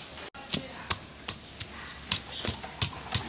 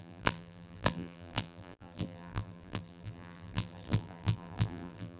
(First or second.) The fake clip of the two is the second